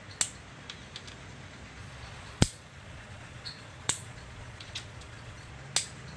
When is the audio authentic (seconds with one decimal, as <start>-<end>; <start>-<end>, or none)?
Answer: 0.0-1.8; 5.5-6.2